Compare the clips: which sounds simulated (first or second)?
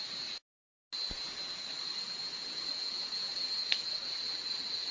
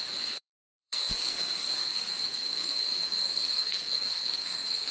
second